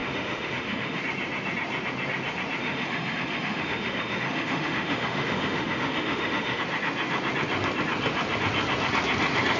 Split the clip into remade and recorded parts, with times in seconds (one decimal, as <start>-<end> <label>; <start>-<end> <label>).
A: 0.0-1.0 remade; 1.0-2.6 recorded; 2.6-6.6 remade; 6.6-9.6 recorded